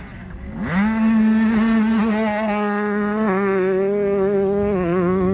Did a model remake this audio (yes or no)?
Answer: no